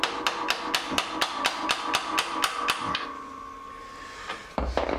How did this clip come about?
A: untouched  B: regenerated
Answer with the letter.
A